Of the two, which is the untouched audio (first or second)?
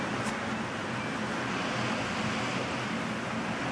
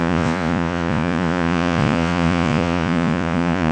first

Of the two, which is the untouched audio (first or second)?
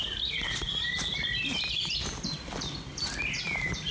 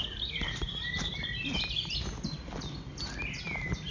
second